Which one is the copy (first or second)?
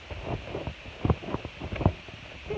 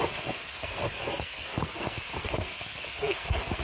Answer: second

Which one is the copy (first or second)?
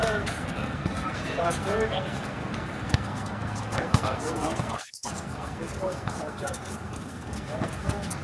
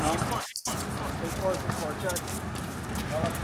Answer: first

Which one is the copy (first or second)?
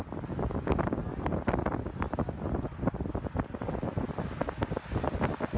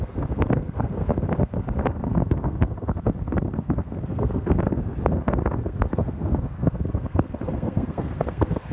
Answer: second